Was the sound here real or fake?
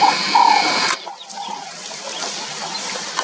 real